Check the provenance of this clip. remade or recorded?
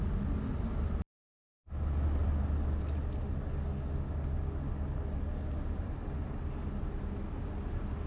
recorded